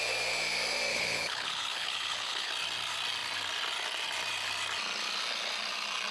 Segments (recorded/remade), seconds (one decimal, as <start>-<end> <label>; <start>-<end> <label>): 0.0-0.9 recorded; 0.9-2.5 remade; 2.5-6.1 recorded